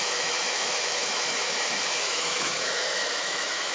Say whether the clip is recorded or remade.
remade